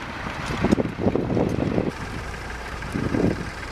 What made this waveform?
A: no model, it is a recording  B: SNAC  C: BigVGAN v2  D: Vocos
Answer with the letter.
C